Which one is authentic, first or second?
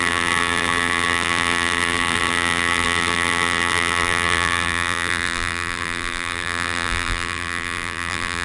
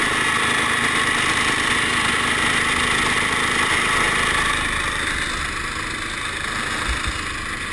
second